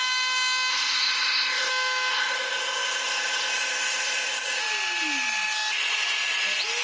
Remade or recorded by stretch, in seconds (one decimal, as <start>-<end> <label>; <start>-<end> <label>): 0.0-0.7 recorded; 0.7-1.7 remade; 1.7-2.1 recorded; 2.1-4.6 remade; 4.6-6.8 recorded